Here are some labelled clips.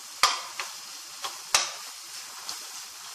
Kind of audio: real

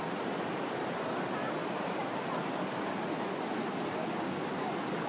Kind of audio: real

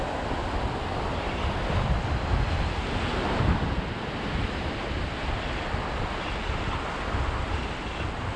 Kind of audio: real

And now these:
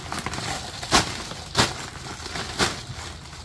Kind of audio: real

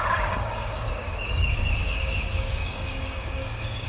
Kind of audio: fake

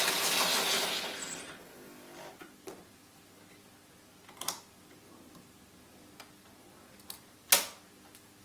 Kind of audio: real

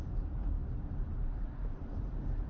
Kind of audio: fake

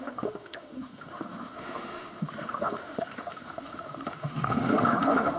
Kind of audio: fake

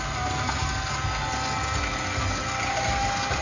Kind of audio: real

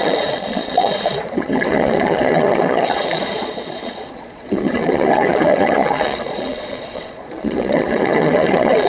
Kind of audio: fake